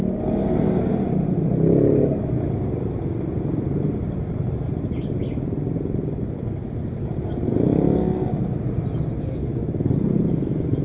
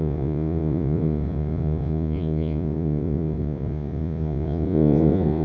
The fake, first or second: second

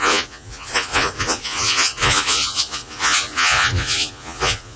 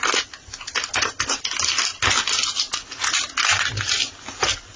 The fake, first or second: first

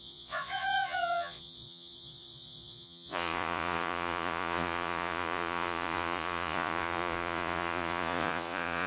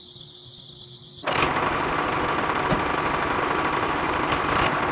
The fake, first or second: first